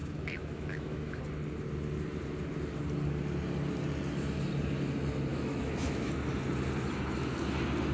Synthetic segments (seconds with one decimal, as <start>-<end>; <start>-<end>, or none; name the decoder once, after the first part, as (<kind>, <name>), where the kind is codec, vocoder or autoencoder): 0.0-1.2 (autoencoder, DAC-VAE); 5.3-6.1